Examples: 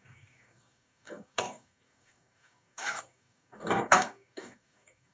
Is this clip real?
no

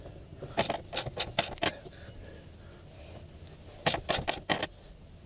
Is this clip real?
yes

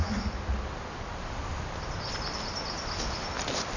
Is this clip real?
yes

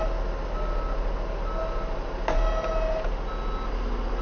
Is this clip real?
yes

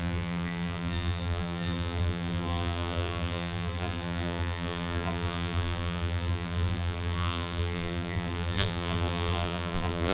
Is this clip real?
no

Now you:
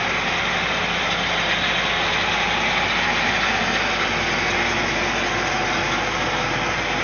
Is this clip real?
yes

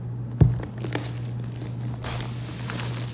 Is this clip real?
yes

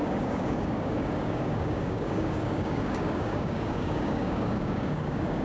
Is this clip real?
no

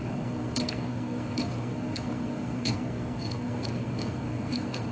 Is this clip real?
no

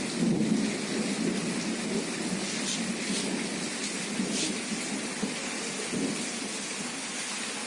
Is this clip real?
yes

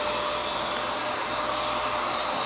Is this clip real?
yes